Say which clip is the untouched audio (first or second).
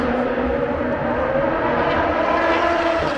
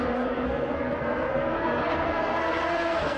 first